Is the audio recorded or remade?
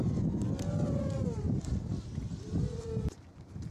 recorded